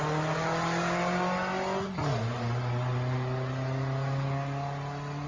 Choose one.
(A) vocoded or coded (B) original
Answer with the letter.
B